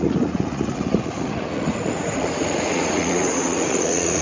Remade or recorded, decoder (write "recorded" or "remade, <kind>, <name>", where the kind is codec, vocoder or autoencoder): remade, vocoder, Vocos